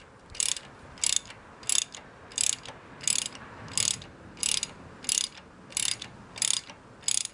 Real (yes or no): yes